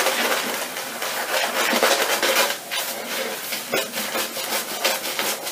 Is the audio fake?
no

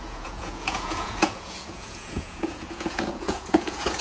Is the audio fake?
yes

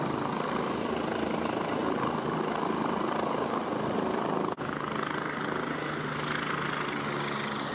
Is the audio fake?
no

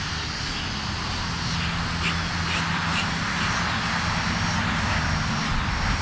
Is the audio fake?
no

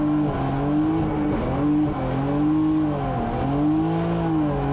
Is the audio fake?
no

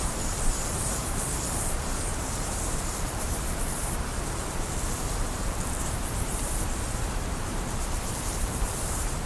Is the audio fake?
yes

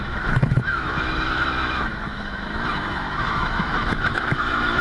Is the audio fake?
yes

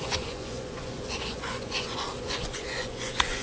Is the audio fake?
yes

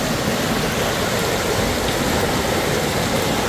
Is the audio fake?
no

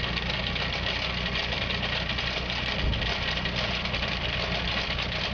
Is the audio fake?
no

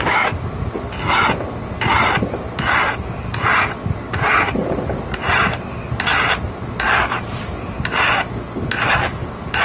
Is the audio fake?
no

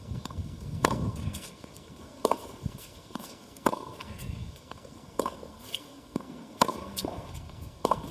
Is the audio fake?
yes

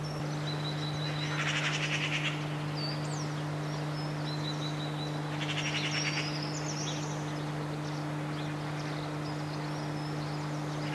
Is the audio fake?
no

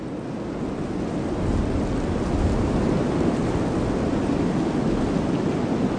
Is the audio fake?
no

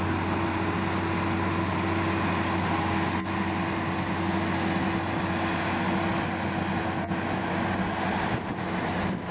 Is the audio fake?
no